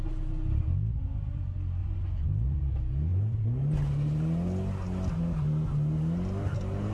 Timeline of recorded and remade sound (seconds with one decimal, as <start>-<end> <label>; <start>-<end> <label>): 0.0-1.8 recorded; 1.8-2.3 remade; 2.3-6.9 recorded